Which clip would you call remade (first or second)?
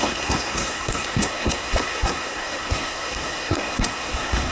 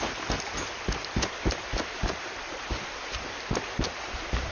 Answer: first